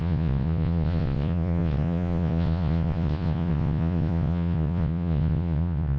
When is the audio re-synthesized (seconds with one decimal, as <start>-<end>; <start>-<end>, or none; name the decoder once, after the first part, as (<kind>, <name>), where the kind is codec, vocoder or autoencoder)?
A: 0.0-6.0 (vocoder, Vocos)

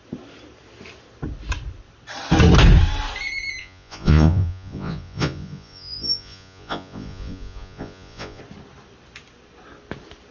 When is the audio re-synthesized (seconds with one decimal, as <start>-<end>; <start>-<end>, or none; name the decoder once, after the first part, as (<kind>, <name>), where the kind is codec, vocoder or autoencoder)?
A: 3.6-8.4 (vocoder, Vocos)